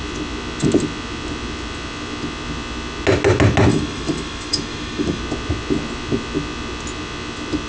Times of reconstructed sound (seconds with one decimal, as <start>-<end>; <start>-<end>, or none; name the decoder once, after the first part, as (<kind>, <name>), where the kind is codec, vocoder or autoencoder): 3.7-5.2 (autoencoder, DAC-VAE)